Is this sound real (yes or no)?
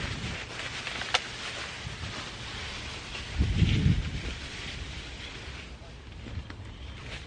yes